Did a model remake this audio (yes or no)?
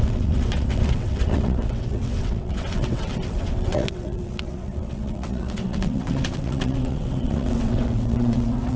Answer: yes